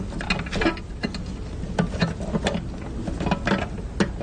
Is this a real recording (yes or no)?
yes